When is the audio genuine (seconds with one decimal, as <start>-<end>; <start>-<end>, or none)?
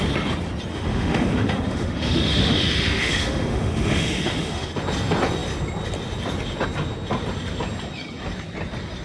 0.0-0.7; 4.7-9.0